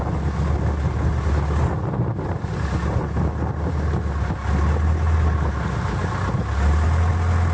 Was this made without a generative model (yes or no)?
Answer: yes